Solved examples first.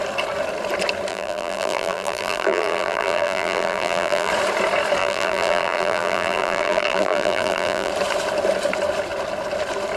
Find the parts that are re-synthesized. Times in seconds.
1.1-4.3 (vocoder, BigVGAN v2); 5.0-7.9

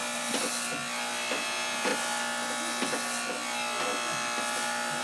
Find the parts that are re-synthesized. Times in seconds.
1.4-1.9 (vocoder, Vocos)

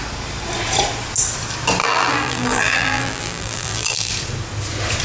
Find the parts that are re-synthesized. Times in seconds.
1.8-4.1 (vocoder, BigVGAN v2)

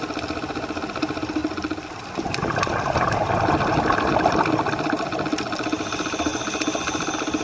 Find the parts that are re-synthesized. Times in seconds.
0.0-6.3 (vocoder, BigVGAN v2)

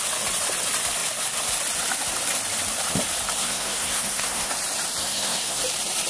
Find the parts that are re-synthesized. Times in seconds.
3.4-4.5 (codec, SNAC); 5.0-5.6

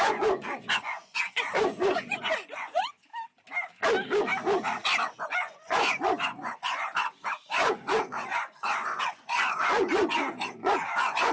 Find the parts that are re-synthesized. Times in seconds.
0.0-3.1 (vocoder, Vocos); 5.2-11.3

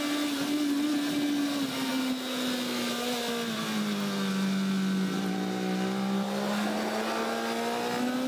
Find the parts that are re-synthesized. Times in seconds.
none

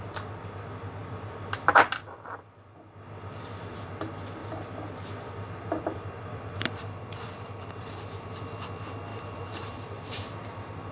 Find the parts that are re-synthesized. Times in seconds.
1.0-3.9 (vocoder, BigVGAN v2); 4.4-7.9; 9.1-10.9